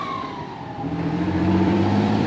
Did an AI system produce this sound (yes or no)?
yes